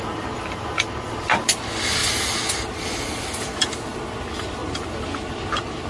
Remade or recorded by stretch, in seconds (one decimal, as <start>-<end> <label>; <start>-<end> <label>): 0.0-5.9 recorded